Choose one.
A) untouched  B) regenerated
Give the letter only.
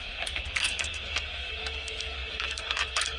B